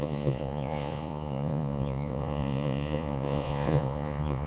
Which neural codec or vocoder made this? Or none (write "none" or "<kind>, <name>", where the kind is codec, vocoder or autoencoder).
vocoder, Vocos